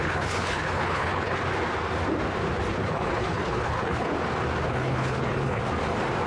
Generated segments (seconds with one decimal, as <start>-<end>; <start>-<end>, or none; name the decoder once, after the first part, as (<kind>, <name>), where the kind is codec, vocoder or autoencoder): 0.0-1.4 (codec, HILCodec); 2.7-4.1; 4.7-5.6